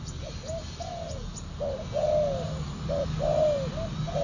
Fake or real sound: real